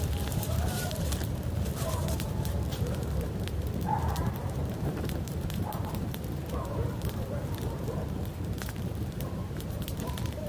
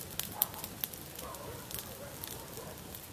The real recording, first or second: second